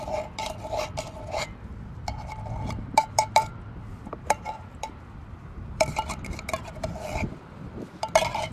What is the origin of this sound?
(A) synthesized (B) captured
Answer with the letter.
A